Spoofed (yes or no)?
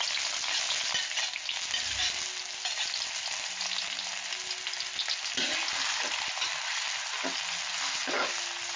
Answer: no